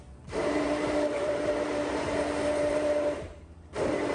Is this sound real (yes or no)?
no